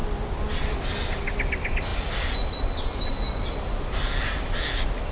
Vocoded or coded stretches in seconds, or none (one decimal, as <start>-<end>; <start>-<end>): none